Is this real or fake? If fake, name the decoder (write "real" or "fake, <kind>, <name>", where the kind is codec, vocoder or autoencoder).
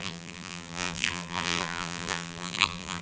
fake, vocoder, BigVGAN v2